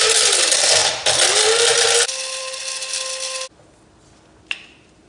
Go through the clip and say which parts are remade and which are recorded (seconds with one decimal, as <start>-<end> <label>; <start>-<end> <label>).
0.0-5.1 recorded